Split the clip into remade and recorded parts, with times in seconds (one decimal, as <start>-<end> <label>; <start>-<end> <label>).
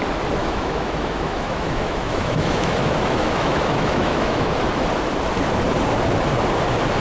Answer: 0.0-0.4 recorded; 0.4-4.5 remade; 4.5-7.0 recorded